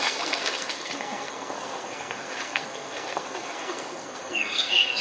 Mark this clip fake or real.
fake